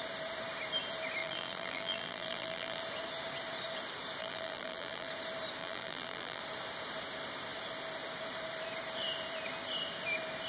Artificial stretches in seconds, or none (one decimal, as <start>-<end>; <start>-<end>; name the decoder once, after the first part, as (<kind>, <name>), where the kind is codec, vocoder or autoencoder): 1.2-2.8 (vocoder, BigVGAN v2); 4.2-5.1; 5.6-6.4